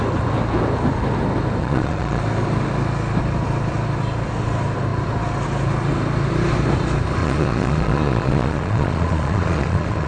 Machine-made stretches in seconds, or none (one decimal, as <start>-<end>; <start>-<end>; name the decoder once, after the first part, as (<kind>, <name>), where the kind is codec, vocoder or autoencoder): 1.6-2.2 (vocoder, Vocos); 7.2-10.1

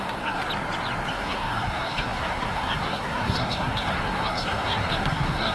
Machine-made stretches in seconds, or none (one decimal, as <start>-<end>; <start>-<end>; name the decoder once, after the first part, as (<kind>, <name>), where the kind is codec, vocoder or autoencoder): 0.0-0.4 (codec, SNAC); 1.1-5.5

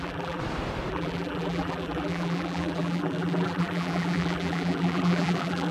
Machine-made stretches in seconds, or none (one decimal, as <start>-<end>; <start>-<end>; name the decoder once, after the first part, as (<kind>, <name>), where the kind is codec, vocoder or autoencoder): 0.0-0.4 (vocoder, BigVGAN v2); 0.9-5.7

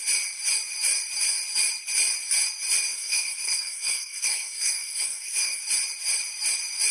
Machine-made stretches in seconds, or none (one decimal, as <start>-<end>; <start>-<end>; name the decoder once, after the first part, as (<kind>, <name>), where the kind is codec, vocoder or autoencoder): 2.9-5.6 (codec, SNAC)